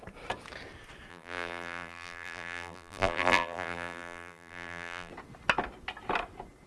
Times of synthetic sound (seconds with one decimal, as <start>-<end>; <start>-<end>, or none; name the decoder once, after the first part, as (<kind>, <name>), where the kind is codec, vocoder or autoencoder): 1.1-5.1 (vocoder, BigVGAN v2)